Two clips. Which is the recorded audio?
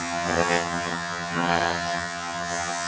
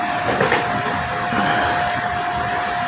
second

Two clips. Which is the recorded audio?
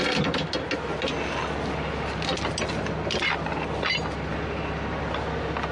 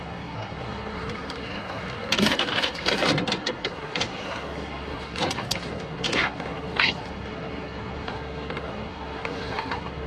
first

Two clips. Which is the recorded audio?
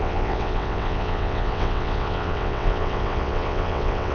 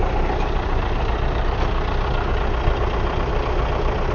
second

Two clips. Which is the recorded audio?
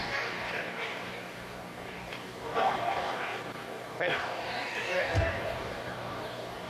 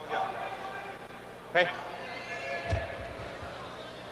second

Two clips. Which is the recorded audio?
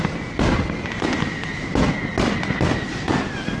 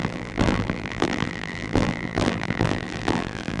first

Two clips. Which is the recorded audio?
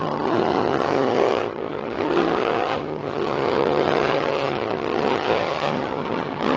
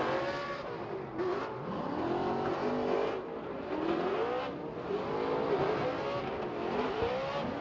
second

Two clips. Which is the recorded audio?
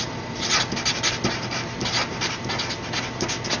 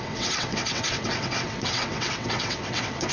first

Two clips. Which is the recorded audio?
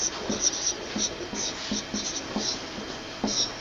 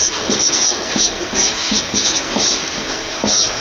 first